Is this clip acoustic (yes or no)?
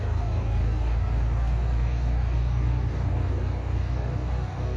no